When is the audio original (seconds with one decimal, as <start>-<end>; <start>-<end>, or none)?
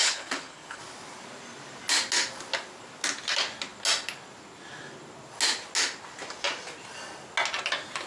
0.8-8.1